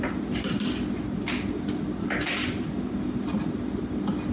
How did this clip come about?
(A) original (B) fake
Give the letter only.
A